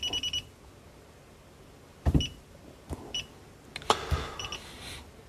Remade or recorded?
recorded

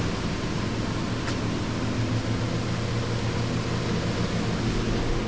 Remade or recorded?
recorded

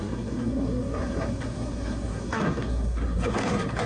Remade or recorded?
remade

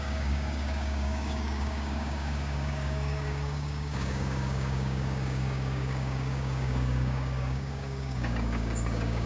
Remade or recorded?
remade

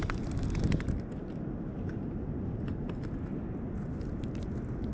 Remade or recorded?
recorded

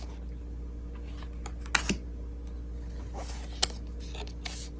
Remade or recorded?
recorded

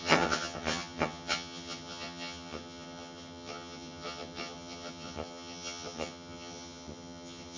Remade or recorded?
remade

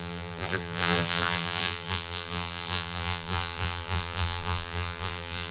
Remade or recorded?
remade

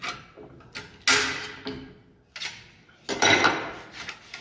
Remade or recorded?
recorded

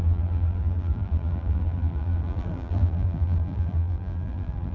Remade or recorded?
remade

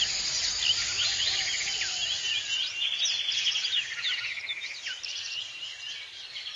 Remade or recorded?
recorded